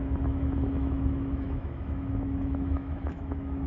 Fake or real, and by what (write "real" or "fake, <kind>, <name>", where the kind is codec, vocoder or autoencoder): fake, autoencoder, DAC-VAE